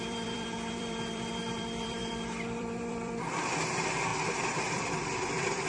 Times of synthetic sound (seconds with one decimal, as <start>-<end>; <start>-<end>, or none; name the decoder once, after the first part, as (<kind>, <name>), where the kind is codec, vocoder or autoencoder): 0.0-4.1 (vocoder, BigVGAN v2); 4.7-5.7

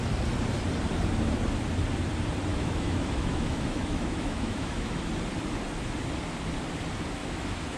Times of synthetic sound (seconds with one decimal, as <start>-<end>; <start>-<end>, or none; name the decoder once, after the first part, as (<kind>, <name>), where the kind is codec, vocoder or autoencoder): 2.5-5.1 (autoencoder, DAC-VAE); 7.2-7.8

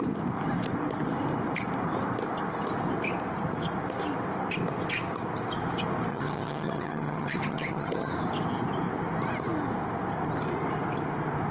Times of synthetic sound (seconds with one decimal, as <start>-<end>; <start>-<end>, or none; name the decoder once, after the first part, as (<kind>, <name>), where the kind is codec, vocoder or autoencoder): 6.1-8.1 (vocoder, HiFi-GAN)

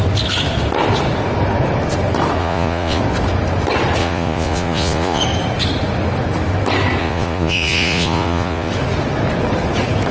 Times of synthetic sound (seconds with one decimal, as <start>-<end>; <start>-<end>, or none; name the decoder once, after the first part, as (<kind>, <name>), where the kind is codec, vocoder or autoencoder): 2.4-3.0 (vocoder, Vocos); 4.0-5.2; 7.0-8.7

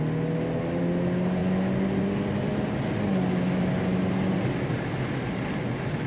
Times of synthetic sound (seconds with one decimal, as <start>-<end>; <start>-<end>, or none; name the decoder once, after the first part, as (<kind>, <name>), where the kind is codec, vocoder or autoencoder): none

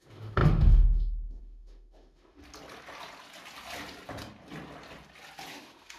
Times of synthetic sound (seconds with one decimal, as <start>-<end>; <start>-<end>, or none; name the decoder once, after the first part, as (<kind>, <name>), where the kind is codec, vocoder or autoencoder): 0.0-2.4 (autoencoder, DAC-VAE); 5.5-6.0